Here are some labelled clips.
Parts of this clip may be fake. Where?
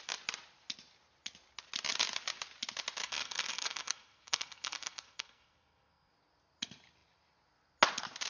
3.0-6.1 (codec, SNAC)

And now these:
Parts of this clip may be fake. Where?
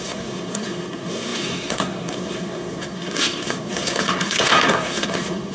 0.0-5.5 (codec, SNAC)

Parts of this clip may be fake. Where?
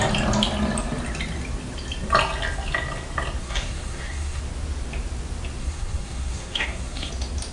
3.4-4.4 (codec, SNAC); 5.6-7.1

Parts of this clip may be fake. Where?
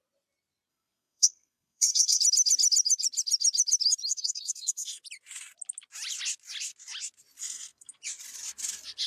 0.7-2.2 (codec, SNAC); 4.1-5.0; 7.4-8.0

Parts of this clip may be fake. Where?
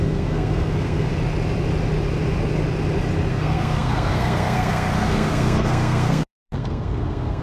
0.0-1.1 (codec, SNAC); 3.3-7.4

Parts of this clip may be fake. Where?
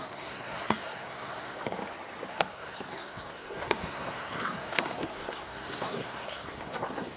0.0-1.8 (codec, SNAC); 2.3-7.2